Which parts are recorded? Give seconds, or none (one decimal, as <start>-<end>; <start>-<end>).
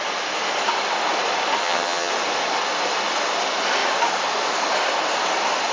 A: 0.0-1.6; 2.1-5.7